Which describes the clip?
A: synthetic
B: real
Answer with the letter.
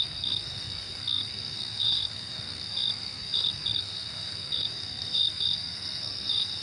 A